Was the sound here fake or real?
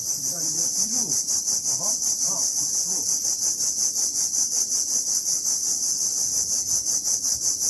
real